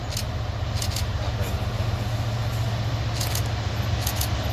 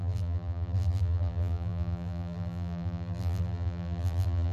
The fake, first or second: second